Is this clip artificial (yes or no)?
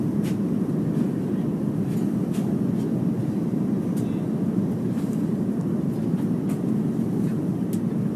yes